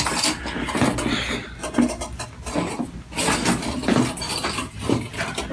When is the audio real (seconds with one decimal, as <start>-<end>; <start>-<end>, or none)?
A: 0.0-5.5